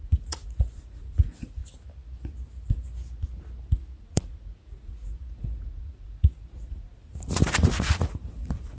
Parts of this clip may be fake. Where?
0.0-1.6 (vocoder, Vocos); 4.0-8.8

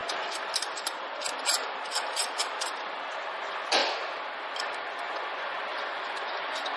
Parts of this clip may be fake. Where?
3.4-3.8 (vocoder, Vocos); 5.0-6.8

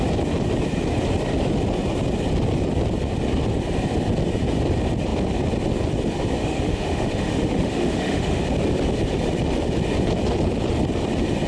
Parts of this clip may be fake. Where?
6.4-8.4 (autoencoder, DAC-VAE)

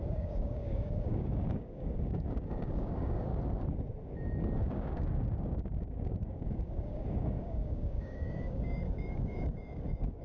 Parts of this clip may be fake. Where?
0.0-3.3 (codec, DAC); 4.6-10.2

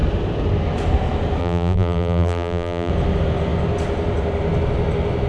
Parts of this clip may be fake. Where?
1.4-2.9 (vocoder, BigVGAN v2)